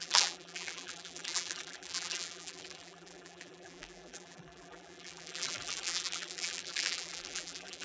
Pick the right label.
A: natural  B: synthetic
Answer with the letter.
B